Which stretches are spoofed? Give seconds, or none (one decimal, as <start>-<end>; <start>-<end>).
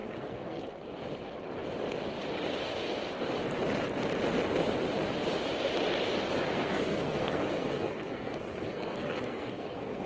0.0-0.8; 6.5-10.1